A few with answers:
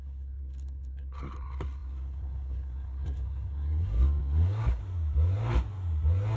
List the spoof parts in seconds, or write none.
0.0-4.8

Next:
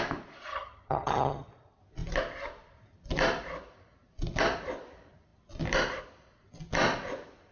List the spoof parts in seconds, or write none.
0.5-1.5

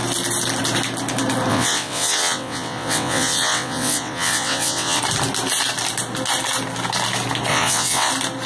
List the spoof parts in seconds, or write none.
1.5-5.0; 7.5-8.1

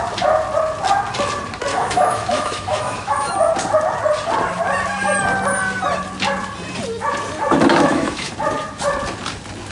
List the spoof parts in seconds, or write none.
1.7-3.3; 7.7-8.3